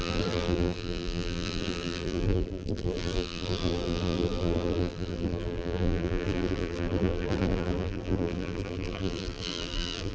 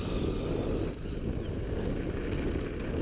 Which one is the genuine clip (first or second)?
second